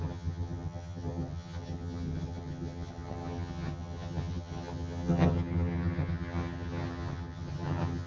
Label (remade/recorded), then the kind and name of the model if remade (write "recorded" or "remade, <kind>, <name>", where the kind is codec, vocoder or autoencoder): remade, vocoder, HiFi-GAN